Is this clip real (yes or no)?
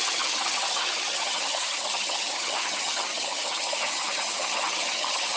no